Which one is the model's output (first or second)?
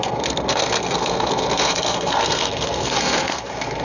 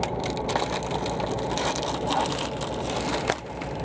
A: first